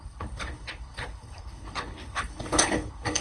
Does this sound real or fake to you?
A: fake